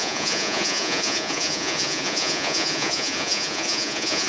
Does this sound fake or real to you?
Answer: fake